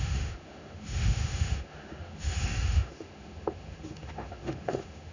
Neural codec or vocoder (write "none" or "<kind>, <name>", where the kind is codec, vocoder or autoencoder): autoencoder, DAC-VAE